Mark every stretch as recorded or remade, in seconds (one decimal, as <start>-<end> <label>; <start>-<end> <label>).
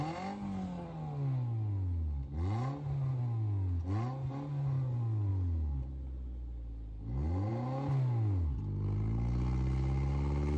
0.0-10.6 recorded